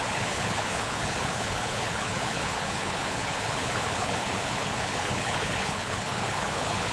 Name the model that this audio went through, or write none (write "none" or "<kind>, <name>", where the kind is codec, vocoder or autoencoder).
codec, HILCodec